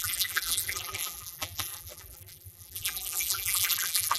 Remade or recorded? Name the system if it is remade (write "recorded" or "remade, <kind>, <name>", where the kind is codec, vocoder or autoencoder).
remade, vocoder, BigVGAN v2